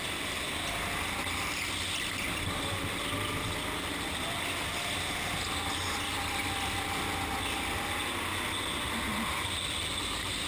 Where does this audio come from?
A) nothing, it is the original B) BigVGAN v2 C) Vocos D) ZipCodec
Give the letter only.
A